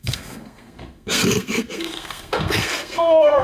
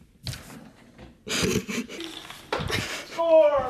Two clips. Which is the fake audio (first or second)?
first